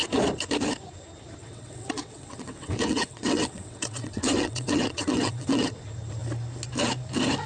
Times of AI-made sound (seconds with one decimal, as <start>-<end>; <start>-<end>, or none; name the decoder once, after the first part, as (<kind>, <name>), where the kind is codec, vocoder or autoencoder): 1.4-5.7 (vocoder, WaveNeXt)